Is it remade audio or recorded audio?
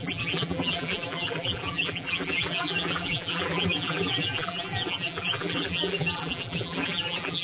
remade